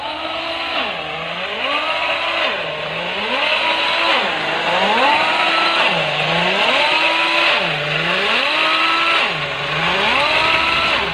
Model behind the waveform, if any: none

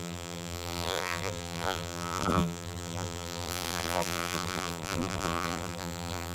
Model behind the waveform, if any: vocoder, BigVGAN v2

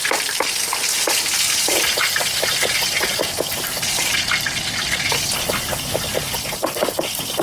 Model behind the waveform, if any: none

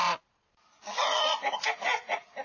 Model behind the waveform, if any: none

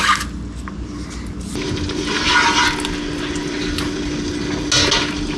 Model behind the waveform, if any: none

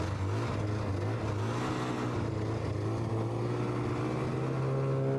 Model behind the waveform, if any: none